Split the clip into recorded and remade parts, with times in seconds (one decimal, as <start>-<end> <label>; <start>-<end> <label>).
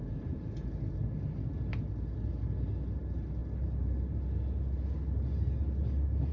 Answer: 0.0-6.3 recorded